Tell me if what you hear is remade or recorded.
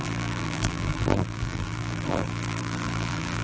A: remade